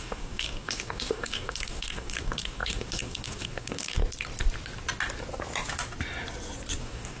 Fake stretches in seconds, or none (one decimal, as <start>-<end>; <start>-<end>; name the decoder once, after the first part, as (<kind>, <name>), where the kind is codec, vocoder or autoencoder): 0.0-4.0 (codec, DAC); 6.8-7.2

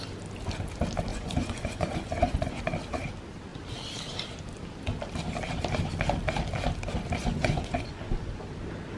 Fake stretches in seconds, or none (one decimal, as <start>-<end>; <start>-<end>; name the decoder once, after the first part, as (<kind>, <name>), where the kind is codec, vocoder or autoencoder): 1.1-2.6 (vocoder, Vocos); 7.2-8.3

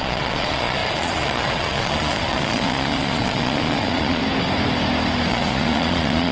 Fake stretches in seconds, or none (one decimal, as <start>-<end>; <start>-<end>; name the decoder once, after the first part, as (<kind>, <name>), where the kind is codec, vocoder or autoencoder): 0.0-4.2 (vocoder, Vocos); 5.3-6.3

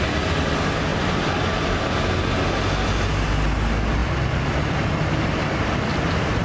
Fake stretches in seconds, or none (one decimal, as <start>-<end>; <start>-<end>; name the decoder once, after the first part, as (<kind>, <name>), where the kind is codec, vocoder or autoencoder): 0.9-1.8 (vocoder, BigVGAN v2); 4.0-6.4

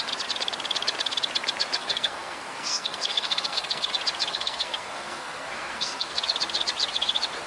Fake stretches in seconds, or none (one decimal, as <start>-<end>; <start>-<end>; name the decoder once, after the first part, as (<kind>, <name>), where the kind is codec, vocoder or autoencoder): 1.8-3.9 (codec, SNAC); 4.3-6.2

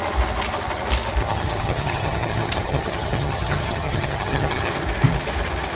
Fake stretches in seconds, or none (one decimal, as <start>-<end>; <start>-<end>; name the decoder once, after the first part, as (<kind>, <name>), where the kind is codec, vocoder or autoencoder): 1.2-4.7 (vocoder, HiFi-GAN)

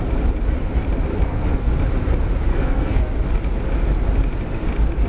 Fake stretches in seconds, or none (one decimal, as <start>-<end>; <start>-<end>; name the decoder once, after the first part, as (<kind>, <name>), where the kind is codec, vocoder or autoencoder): 1.1-1.7 (codec, SNAC); 2.5-3.0

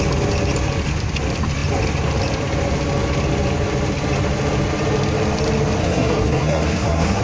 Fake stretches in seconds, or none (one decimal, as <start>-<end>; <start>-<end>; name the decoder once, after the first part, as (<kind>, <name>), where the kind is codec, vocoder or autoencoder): 5.8-7.2 (codec, SNAC)